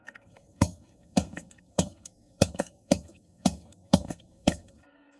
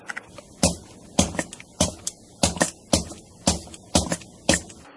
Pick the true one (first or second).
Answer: second